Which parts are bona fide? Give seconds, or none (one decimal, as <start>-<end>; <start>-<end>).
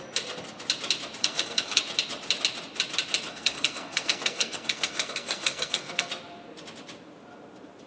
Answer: 0.0-1.2; 1.8-3.3; 6.1-7.9